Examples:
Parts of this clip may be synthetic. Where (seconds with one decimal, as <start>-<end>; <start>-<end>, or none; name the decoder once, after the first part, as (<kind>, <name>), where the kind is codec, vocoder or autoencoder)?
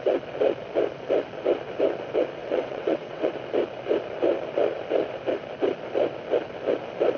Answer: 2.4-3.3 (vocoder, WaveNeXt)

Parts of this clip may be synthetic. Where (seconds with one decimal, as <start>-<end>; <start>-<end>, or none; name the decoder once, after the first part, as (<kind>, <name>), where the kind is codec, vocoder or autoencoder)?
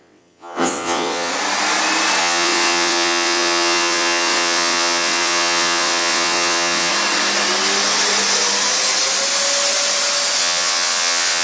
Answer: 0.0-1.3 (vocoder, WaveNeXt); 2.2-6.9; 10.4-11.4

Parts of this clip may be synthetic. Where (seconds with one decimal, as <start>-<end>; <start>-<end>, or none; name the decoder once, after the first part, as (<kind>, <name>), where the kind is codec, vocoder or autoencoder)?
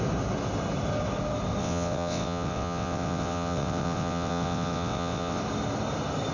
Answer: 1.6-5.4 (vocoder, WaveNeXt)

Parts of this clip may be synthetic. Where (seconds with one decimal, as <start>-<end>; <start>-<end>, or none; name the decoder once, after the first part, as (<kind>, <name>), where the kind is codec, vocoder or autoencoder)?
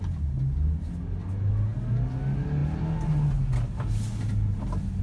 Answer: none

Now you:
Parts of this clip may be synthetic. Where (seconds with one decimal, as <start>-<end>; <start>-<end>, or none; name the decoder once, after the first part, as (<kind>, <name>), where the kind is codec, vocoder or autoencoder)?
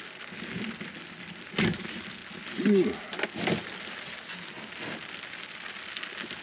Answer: none